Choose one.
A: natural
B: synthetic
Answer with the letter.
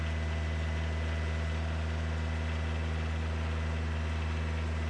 A